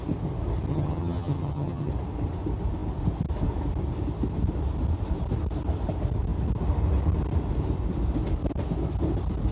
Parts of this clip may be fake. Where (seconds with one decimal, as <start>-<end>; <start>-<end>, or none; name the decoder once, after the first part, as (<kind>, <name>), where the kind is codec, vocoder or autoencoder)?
0.7-1.9 (vocoder, HiFi-GAN)